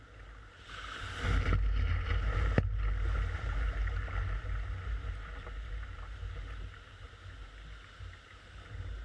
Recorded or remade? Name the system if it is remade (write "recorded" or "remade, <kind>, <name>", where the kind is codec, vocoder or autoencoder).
recorded